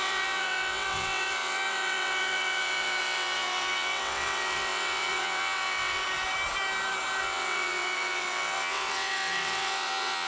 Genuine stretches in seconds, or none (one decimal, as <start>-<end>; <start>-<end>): 6.0-7.2